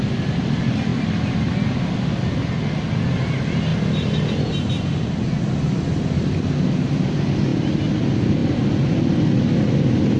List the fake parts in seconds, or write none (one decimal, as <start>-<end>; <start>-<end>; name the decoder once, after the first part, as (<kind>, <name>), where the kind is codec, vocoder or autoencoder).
0.9-2.8 (vocoder, BigVGAN v2)